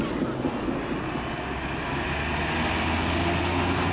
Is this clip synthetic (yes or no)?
no